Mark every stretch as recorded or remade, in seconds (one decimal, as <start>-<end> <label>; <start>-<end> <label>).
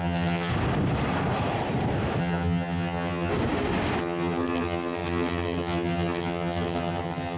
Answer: 0.0-0.5 remade; 0.5-2.2 recorded; 2.2-3.3 remade; 3.3-4.0 recorded; 4.0-7.4 remade